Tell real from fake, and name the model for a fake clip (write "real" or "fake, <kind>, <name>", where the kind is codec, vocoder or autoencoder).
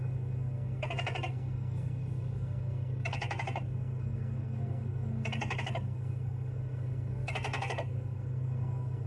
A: fake, codec, SNAC